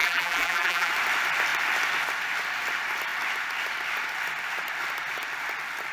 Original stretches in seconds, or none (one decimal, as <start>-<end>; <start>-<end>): 0.9-5.9